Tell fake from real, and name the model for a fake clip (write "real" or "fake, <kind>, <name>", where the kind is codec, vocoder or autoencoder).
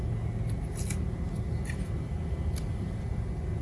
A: real